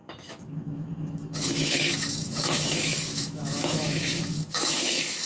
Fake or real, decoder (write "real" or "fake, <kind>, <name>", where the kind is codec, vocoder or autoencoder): fake, autoencoder, DAC-VAE